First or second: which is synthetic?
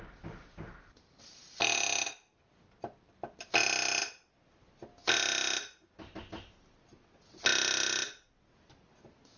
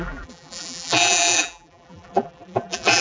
second